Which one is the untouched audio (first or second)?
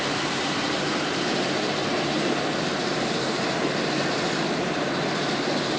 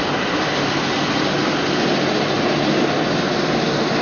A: second